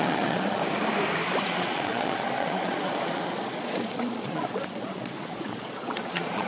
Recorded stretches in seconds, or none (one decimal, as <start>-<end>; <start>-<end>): 0.6-1.4

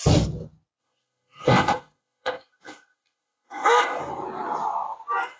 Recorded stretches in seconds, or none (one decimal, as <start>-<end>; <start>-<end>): 0.0-0.8; 4.0-5.4

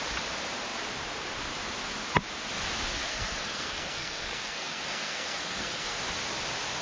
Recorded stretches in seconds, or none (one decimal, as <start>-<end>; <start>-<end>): 0.0-3.1; 6.0-6.8

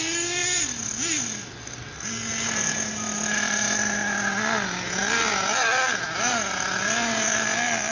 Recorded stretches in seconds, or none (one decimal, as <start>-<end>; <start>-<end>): 0.0-7.9